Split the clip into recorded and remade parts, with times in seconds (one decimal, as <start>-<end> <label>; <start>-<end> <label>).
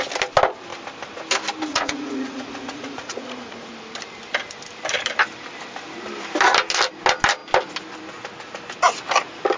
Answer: 0.0-1.7 recorded; 1.7-3.7 remade; 3.7-9.6 recorded